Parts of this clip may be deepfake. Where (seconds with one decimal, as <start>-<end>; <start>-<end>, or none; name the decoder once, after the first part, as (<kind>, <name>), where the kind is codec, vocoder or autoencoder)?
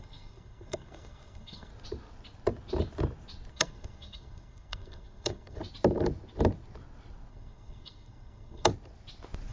0.0-1.7 (codec, SNAC); 3.5-5.6; 7.3-8.7